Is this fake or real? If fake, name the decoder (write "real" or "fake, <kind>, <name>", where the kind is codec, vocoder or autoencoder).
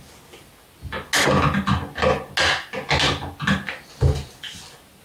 real